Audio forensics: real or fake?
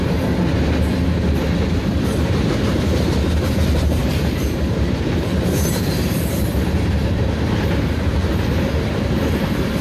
fake